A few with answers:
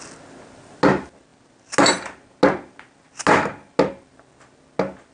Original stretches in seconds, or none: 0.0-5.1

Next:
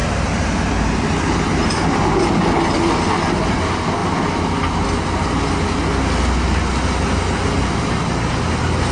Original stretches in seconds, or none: 0.0-8.9

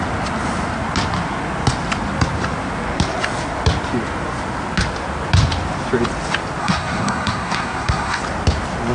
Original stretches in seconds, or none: 0.0-6.6; 8.2-8.9

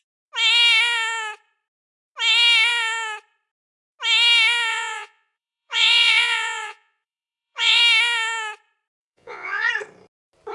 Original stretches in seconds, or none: 0.0-4.7; 7.8-9.0; 9.7-10.5

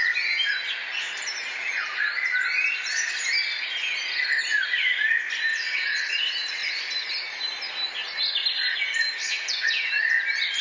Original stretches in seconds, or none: 0.0-5.5; 6.1-9.3; 9.9-10.6